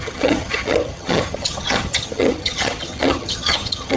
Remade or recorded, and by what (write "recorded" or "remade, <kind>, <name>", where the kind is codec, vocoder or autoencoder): remade, vocoder, HiFi-GAN